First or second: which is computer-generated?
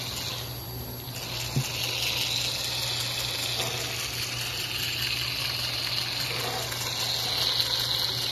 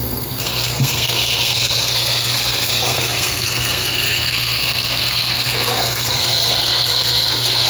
second